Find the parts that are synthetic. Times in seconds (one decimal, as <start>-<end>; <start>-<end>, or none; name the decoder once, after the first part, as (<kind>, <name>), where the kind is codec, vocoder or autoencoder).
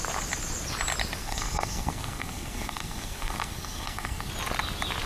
1.2-4.3 (codec, SNAC)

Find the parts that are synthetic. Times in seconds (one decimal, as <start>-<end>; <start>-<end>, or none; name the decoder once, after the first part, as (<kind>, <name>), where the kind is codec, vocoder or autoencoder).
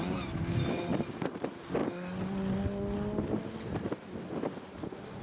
0.0-1.8 (vocoder, BigVGAN v2)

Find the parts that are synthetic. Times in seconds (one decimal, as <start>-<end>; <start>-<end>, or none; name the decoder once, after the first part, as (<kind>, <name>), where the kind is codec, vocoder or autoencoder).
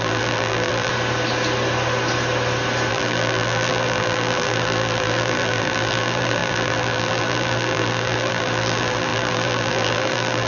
0.0-0.9 (vocoder, BigVGAN v2); 2.9-10.5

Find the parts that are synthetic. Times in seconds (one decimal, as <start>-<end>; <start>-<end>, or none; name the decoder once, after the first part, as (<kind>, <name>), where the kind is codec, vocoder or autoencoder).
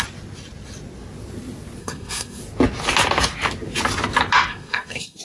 1.8-2.4 (codec, SNAC); 4.5-5.2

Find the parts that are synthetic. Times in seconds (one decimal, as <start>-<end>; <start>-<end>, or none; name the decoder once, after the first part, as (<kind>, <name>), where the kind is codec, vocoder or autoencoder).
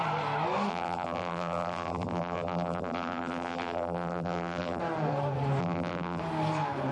0.7-4.8 (vocoder, BigVGAN v2); 5.6-6.2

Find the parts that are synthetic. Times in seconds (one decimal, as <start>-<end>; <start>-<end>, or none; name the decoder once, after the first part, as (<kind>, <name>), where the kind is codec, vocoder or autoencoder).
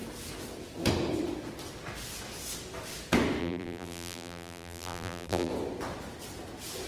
3.4-5.5 (vocoder, BigVGAN v2)